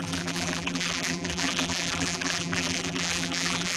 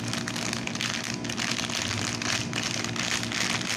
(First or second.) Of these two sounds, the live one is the second